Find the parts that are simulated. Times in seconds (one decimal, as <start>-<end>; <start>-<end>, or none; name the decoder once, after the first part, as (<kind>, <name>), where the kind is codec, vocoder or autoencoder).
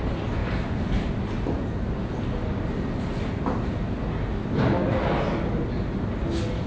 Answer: none